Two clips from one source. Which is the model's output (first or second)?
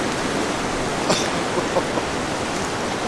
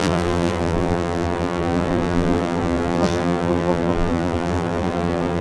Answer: second